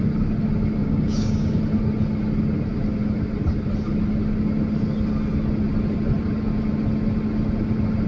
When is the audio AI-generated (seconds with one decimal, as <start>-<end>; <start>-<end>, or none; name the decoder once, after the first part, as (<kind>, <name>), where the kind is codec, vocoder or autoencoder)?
0.8-1.6 (codec, DAC)